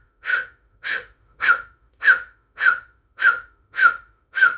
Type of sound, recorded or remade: remade